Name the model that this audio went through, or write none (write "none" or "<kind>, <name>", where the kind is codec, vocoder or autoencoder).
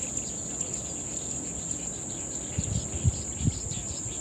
none